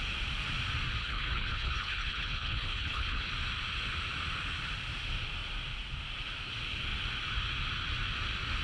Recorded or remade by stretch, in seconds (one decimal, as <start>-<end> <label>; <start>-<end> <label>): 0.0-1.0 recorded; 1.0-3.3 remade; 3.3-8.6 recorded

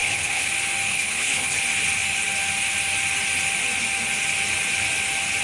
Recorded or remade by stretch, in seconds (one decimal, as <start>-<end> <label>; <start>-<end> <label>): 0.0-0.5 remade; 0.5-0.9 recorded; 0.9-1.6 remade; 1.6-5.4 recorded

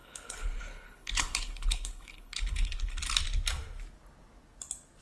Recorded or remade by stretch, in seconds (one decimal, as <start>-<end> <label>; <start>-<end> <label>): 0.0-3.0 remade; 3.0-5.0 recorded

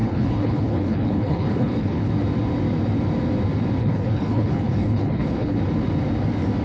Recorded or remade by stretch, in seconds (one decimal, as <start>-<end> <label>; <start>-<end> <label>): 0.0-2.1 remade; 2.1-3.8 recorded; 3.8-5.6 remade; 5.6-6.6 recorded

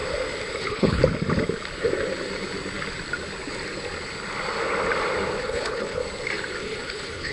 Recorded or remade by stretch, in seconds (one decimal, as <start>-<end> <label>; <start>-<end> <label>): 0.0-0.5 recorded; 0.5-1.0 remade; 1.0-5.4 recorded; 5.4-6.0 remade; 6.0-6.6 recorded; 6.6-7.3 remade

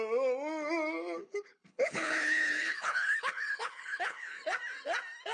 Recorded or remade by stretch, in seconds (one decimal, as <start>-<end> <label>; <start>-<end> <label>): 0.0-1.2 recorded; 1.2-4.4 remade; 4.4-5.3 recorded

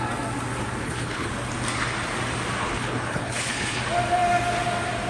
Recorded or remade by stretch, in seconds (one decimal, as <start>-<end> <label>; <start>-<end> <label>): 0.0-0.8 recorded; 0.8-1.3 remade; 1.3-2.6 recorded; 2.6-3.8 remade; 3.8-5.1 recorded

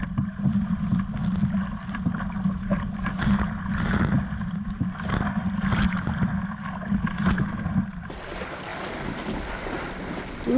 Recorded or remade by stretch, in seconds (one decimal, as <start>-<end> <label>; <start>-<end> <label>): 0.0-10.6 recorded